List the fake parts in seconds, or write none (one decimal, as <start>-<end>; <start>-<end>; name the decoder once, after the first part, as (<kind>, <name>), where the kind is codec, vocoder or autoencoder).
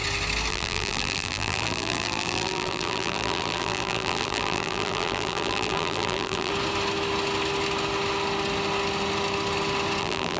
0.5-6.5 (vocoder, BigVGAN v2); 10.0-10.4